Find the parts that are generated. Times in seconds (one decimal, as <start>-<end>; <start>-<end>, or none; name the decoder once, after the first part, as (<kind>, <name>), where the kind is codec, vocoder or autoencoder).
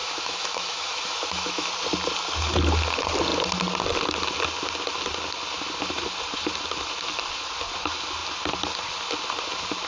0.0-1.7 (autoencoder, DAC-VAE)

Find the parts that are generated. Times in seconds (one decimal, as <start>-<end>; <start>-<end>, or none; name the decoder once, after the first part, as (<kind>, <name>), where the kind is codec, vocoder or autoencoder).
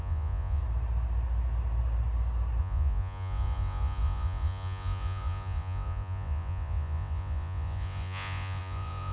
0.0-0.6 (vocoder, Vocos); 2.6-9.1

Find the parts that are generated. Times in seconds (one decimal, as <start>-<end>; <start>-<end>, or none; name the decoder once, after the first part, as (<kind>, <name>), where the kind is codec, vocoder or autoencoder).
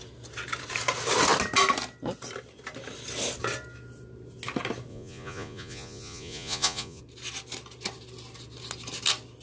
4.9-7.0 (vocoder, Vocos)